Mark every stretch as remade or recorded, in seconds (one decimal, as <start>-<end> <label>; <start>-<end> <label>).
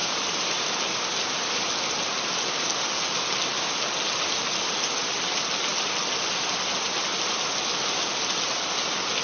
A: 0.0-0.7 remade; 0.7-9.2 recorded